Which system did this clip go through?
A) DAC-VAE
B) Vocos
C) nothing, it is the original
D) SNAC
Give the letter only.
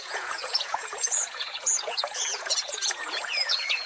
B